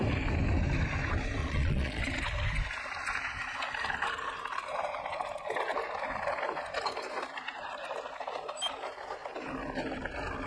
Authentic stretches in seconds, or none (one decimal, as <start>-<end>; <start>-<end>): 0.0-1.4; 2.0-10.5